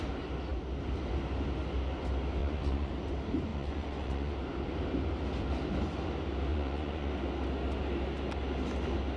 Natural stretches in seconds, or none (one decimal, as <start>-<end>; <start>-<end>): 0.0-2.4; 2.9-3.5; 4.3-6.5; 7.1-9.2